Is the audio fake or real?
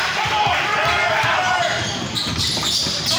real